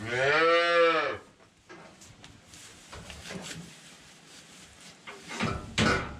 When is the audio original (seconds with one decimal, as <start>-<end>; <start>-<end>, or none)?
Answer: 0.0-2.7; 5.4-6.2